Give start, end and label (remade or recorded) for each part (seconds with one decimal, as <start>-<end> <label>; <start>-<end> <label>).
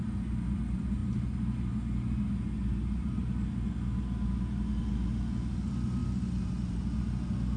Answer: 0.0-7.6 recorded